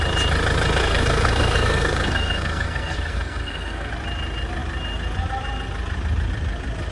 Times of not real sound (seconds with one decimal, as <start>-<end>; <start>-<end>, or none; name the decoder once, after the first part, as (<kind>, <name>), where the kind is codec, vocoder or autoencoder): 0.8-3.9 (codec, SNAC)

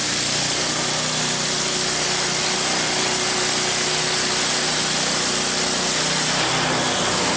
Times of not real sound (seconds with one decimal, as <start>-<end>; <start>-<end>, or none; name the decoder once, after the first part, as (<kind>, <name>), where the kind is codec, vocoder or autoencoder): 0.0-0.6 (vocoder, BigVGAN v2)

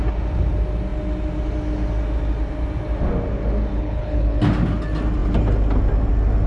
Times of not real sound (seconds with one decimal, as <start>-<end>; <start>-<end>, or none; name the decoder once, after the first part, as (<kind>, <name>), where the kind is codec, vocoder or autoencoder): 3.7-4.4 (codec, HILCodec)

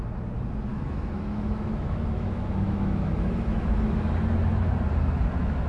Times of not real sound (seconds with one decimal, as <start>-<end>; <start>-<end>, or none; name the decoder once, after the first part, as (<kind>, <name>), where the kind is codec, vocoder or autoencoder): 0.7-4.1 (autoencoder, DAC-VAE)

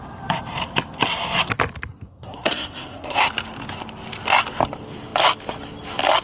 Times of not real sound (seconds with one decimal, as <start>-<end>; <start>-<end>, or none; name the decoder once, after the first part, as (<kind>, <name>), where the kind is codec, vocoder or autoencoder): 1.9-3.3 (codec, SNAC)

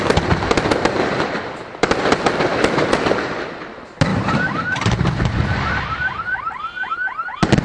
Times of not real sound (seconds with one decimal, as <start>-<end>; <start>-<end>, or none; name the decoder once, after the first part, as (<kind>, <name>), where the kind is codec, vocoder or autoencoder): 4.1-6.9 (vocoder, BigVGAN v2)

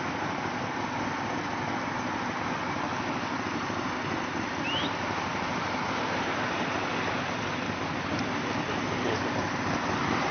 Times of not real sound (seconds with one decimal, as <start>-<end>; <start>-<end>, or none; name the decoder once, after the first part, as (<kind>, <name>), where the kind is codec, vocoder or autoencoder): none